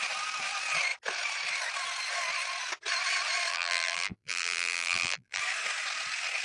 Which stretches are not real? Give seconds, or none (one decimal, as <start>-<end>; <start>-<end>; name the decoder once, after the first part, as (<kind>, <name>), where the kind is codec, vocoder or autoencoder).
3.5-5.4 (vocoder, BigVGAN v2)